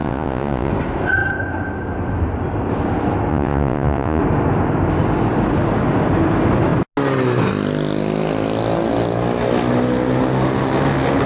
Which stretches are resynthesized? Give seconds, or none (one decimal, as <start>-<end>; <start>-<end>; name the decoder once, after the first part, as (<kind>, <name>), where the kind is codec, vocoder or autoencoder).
0.0-0.7 (vocoder, Vocos); 3.3-4.2